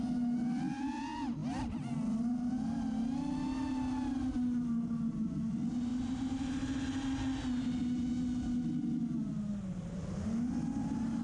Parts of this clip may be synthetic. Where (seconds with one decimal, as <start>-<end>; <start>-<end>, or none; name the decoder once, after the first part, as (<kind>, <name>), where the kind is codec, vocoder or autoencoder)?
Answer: 5.9-6.6 (vocoder, BigVGAN v2)